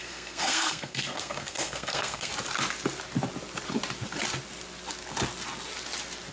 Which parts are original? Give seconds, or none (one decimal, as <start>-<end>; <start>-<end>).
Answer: 2.3-6.3

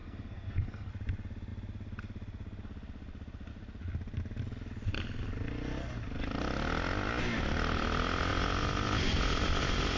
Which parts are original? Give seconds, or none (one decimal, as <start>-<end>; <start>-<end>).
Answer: 0.9-10.0

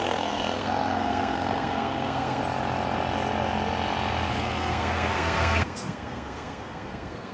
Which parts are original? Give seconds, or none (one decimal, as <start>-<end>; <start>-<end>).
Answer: 2.4-4.3

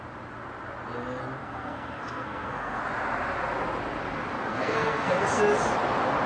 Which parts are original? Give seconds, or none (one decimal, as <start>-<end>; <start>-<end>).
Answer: 0.0-1.4; 2.8-4.5; 5.4-6.3